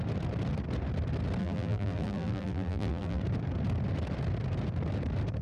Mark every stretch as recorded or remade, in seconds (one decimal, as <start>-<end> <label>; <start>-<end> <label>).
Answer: 0.0-1.4 recorded; 1.4-3.2 remade; 3.2-5.4 recorded